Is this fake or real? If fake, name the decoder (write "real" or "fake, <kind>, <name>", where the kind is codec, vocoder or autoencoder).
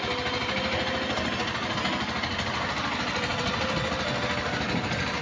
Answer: real